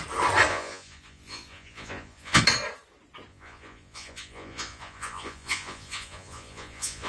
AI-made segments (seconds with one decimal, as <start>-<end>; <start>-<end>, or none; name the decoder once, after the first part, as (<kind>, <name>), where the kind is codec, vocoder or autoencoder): 0.5-2.4 (vocoder, Vocos); 3.3-7.1